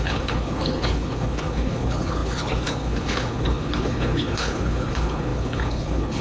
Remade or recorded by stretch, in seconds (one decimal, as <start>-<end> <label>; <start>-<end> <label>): 0.0-6.2 remade